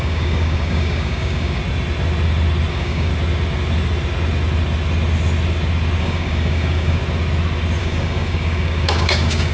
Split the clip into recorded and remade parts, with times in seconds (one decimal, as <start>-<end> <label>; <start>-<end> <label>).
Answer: 0.0-1.6 remade; 1.6-2.7 recorded; 2.7-3.1 remade; 3.1-6.0 recorded; 6.0-7.0 remade; 7.0-7.8 recorded; 7.8-9.5 remade